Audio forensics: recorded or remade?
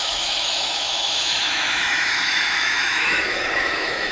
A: remade